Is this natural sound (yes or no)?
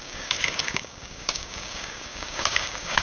no